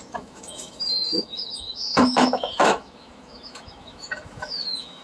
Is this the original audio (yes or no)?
no